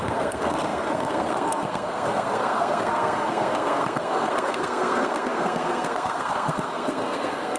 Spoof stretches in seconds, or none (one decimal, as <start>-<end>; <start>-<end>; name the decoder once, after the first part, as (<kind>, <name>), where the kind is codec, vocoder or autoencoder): 0.0-7.6 (codec, SNAC)